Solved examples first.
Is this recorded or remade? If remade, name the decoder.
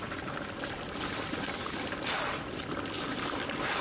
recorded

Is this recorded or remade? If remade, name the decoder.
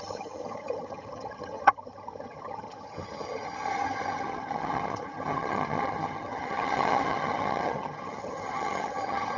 remade, vocoder, HiFi-GAN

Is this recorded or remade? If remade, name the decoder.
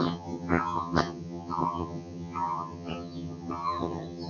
remade, vocoder, HiFi-GAN